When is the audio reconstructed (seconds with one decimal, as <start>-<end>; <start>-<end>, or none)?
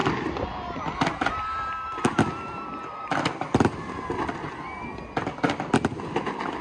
none